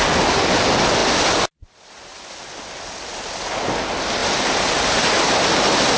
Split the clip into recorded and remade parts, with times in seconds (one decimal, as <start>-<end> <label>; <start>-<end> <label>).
0.0-6.0 recorded